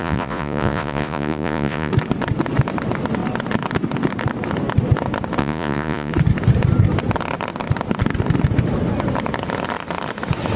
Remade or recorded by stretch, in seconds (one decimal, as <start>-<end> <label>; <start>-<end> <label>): 0.0-1.9 remade; 1.9-5.4 recorded; 5.4-6.1 remade; 6.1-10.6 recorded